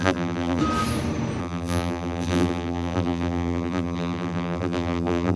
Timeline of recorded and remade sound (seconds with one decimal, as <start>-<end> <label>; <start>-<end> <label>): 0.0-0.6 remade; 0.6-1.4 recorded; 1.4-5.4 remade